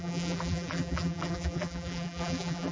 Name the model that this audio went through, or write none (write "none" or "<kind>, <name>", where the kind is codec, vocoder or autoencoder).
vocoder, BigVGAN v2